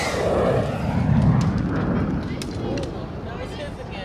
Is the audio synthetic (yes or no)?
no